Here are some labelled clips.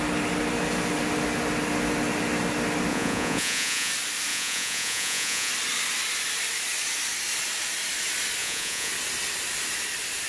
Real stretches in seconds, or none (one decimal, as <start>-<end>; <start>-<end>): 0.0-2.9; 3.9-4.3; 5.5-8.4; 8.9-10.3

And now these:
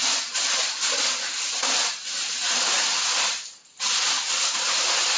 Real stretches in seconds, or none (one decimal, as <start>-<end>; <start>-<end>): 0.0-2.0; 4.7-5.2

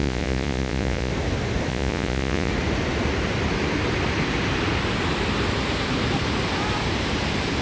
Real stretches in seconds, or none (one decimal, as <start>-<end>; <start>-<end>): 1.1-1.7; 2.5-7.6

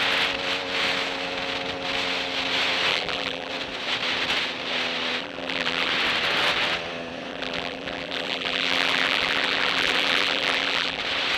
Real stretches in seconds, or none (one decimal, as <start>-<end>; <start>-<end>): 0.0-2.9; 3.5-5.2; 5.9-7.3; 11.0-11.4

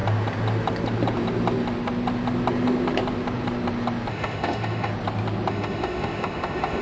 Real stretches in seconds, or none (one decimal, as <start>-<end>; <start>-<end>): 0.0-4.1; 4.9-5.5